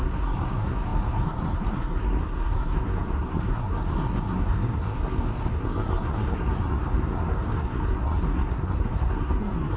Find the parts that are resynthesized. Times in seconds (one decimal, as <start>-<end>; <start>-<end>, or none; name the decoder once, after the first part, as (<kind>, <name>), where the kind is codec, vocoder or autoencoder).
0.0-9.8 (codec, SNAC)